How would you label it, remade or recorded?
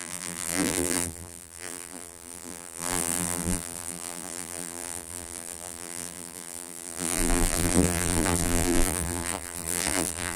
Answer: remade